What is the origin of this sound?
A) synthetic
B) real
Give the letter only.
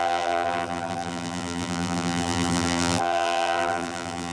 A